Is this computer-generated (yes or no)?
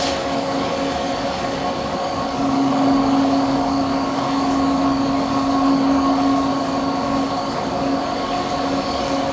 yes